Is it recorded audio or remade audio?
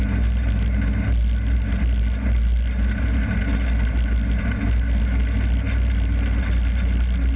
recorded